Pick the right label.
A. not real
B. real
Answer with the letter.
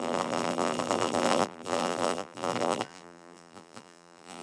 A